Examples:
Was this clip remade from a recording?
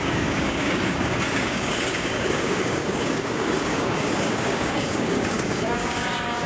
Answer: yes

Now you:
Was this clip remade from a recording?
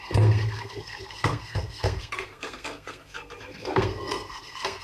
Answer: yes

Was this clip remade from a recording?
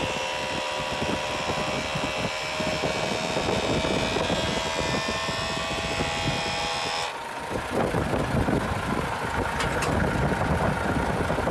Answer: no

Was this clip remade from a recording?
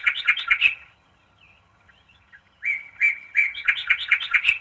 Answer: yes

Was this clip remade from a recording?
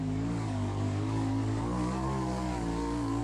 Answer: yes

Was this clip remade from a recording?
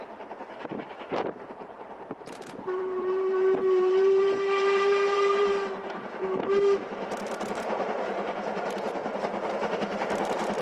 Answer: yes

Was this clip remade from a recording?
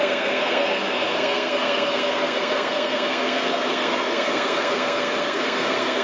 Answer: yes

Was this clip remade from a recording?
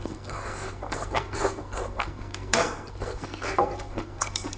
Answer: yes